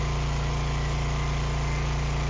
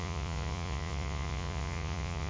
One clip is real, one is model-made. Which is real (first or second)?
first